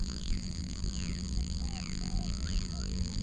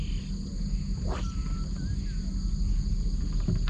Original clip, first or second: second